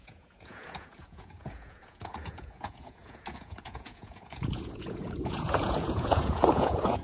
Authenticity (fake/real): fake